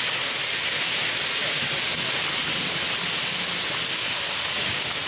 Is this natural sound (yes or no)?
yes